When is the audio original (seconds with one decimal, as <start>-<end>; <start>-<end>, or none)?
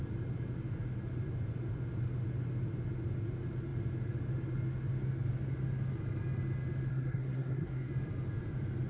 0.0-6.9; 7.9-8.9